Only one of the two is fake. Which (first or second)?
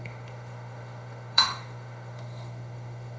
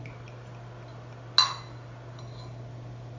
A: first